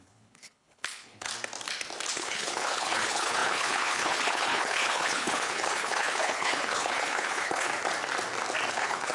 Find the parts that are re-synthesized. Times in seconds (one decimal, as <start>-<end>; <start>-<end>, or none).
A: 0.0-1.3; 2.1-7.7; 8.7-9.1